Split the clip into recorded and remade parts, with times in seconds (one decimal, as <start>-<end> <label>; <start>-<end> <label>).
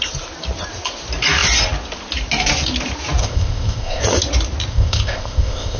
0.0-3.2 recorded; 3.2-4.0 remade; 4.0-4.7 recorded; 4.7-5.8 remade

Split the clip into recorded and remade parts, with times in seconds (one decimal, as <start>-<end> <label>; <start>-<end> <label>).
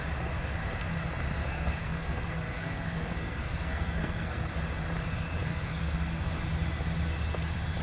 0.0-1.4 recorded; 1.4-4.5 remade; 4.5-5.5 recorded; 5.5-6.3 remade; 6.3-7.8 recorded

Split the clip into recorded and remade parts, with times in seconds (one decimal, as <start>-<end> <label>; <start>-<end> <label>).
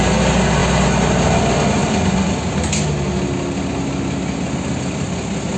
0.0-1.8 recorded; 1.8-2.3 remade; 2.3-5.6 recorded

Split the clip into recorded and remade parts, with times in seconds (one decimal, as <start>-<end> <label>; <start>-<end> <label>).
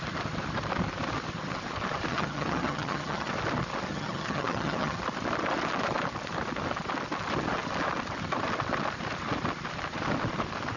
0.0-2.1 recorded; 2.1-3.3 remade; 3.3-3.9 recorded; 3.9-5.0 remade; 5.0-10.8 recorded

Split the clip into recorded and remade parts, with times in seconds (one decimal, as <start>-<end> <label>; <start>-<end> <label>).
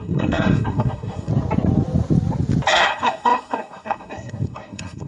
0.0-1.3 remade; 1.3-2.7 recorded; 2.7-5.1 remade